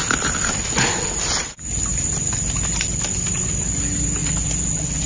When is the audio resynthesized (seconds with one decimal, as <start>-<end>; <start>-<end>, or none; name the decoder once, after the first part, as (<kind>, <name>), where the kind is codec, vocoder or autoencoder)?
none